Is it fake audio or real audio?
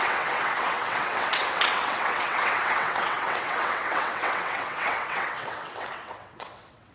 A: fake